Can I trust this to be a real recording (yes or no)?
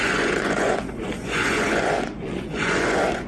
no